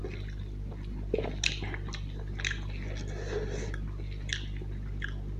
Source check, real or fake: real